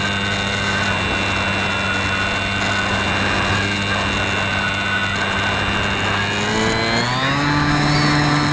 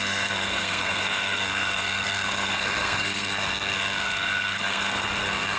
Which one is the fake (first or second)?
second